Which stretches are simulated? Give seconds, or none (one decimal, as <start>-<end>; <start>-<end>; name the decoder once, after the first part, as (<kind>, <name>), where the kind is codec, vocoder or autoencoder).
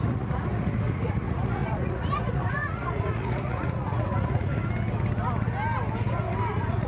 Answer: 0.0-4.6 (vocoder, Vocos); 6.5-6.9